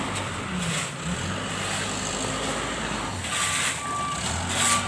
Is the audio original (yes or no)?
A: yes